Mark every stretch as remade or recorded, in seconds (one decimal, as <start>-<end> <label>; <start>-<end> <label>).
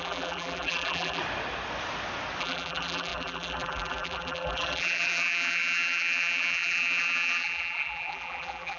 0.0-1.2 remade; 1.2-2.4 recorded; 2.4-8.8 remade